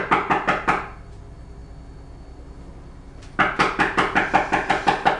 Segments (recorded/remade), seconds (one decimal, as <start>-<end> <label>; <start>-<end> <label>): 0.0-5.2 recorded